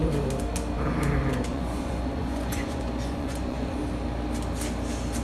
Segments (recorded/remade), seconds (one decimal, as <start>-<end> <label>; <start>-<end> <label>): 0.0-1.5 recorded; 1.5-3.8 remade; 3.8-5.2 recorded